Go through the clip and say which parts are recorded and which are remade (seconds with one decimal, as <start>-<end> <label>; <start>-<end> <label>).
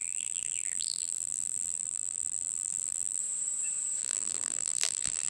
0.0-3.2 remade; 3.2-4.0 recorded; 4.0-5.3 remade